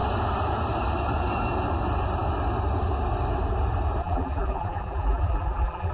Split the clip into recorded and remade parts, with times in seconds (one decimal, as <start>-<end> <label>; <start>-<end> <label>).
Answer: 0.0-4.0 recorded; 4.0-5.9 remade